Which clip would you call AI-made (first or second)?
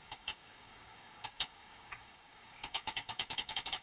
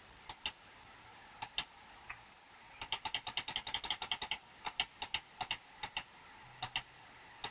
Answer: first